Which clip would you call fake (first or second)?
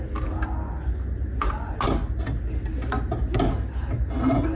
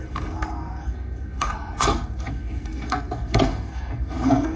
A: second